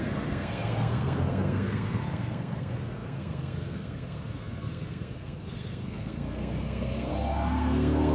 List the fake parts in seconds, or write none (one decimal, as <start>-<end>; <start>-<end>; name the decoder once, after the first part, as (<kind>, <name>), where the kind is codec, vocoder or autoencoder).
0.0-8.1 (codec, SNAC)